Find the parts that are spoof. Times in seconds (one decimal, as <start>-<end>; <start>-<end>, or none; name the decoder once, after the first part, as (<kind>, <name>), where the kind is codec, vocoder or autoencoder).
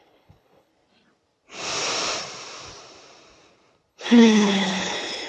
0.0-0.7 (codec, HILCodec); 3.9-5.3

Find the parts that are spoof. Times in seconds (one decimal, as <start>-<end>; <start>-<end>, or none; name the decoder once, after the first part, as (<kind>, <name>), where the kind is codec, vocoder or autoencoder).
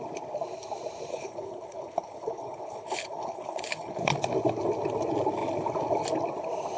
1.1-4.1 (codec, HILCodec)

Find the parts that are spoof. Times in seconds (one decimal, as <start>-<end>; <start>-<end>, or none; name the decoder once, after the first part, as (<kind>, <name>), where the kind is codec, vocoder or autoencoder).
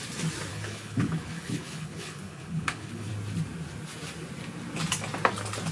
0.5-3.1 (codec, HILCodec)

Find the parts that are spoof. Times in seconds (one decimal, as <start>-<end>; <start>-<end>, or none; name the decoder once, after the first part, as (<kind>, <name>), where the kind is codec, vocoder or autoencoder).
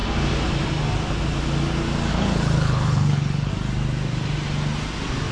2.1-3.5 (codec, HILCodec)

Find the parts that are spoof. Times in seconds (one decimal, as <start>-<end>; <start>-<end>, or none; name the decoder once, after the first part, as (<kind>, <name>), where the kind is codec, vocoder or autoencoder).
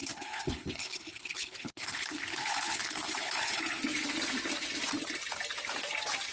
0.0-3.8 (codec, HILCodec)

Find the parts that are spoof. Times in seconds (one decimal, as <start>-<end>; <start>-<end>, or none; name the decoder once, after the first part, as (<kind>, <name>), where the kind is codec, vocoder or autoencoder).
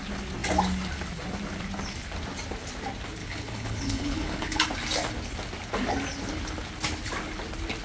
3.2-4.6 (codec, HILCodec)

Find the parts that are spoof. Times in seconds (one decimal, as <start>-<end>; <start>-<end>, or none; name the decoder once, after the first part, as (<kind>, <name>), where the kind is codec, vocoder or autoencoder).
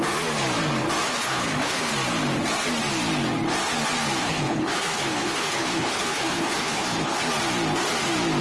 1.1-1.9 (codec, HILCodec); 4.2-7.2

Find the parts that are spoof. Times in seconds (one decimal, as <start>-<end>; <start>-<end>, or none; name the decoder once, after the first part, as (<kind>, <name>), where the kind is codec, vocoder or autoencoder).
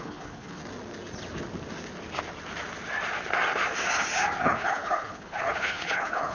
0.0-0.6 (codec, HILCodec); 4.4-6.3